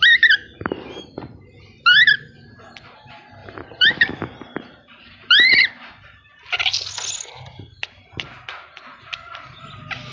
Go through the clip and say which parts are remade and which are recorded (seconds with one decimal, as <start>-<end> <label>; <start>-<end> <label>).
0.0-3.4 recorded; 3.4-6.3 remade; 6.3-10.1 recorded

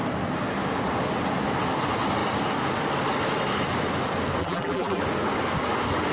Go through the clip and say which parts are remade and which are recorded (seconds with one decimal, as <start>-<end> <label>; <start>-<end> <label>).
0.0-4.4 recorded; 4.4-5.0 remade; 5.0-6.1 recorded

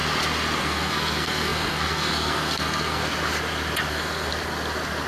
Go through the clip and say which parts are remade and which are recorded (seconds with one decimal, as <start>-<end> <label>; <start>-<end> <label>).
0.0-0.6 recorded; 0.6-3.0 remade; 3.0-3.9 recorded; 3.9-4.3 remade; 4.3-5.1 recorded

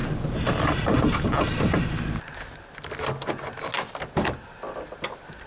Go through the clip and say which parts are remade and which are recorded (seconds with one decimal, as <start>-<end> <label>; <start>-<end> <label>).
0.0-5.5 recorded

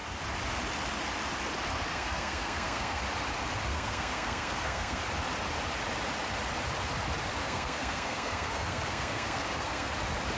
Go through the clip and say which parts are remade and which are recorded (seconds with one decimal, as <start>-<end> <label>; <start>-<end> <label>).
0.0-1.9 recorded; 1.9-3.0 remade; 3.0-3.7 recorded; 3.7-5.0 remade; 5.0-7.4 recorded; 7.4-9.9 remade; 9.9-10.4 recorded